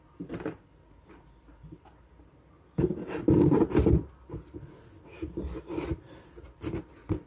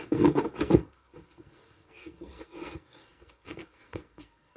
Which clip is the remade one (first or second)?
second